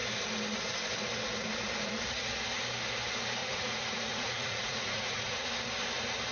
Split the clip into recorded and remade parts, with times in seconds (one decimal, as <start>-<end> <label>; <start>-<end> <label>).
0.0-3.4 recorded; 3.4-5.5 remade; 5.5-6.3 recorded